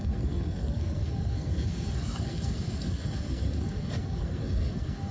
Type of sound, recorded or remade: remade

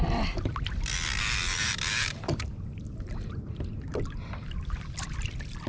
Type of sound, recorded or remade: remade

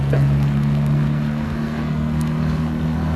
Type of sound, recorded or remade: remade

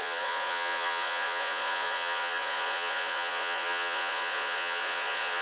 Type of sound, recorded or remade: remade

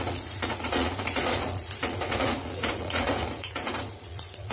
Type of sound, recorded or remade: remade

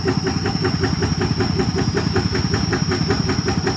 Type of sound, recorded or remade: recorded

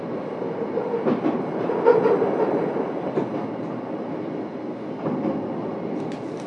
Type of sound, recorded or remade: recorded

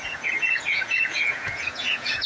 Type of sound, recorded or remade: remade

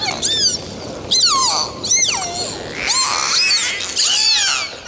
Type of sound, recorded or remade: recorded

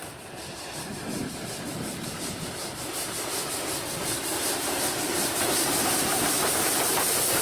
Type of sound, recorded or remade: remade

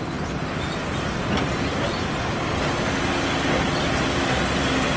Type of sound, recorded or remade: recorded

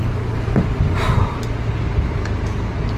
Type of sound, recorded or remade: recorded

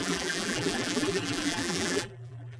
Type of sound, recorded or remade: remade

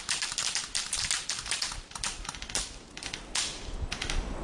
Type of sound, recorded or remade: recorded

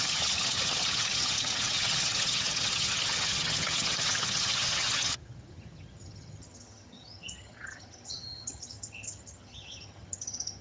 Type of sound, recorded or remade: remade